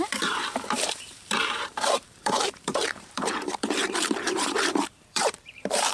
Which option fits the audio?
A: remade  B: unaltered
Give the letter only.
A